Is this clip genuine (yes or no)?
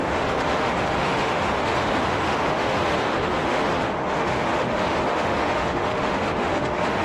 no